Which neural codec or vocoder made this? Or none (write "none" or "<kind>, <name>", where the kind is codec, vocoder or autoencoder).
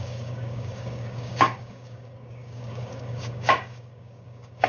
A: codec, DAC